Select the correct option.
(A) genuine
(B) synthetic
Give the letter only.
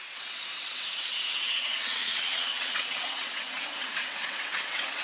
B